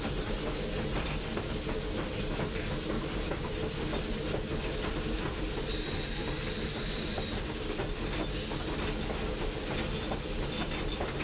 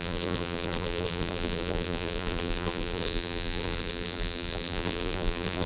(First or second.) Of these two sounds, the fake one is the second